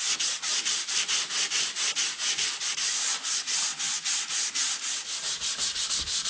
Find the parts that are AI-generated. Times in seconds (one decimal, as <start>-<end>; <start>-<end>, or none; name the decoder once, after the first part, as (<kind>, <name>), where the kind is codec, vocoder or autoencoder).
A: 0.5-2.6 (vocoder, BigVGAN v2)